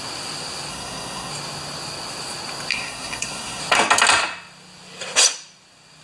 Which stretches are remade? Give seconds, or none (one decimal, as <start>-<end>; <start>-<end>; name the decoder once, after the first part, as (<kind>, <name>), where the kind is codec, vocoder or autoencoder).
0.7-1.3 (codec, SNAC); 2.7-3.6